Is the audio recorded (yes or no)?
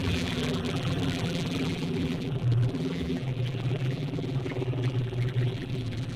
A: no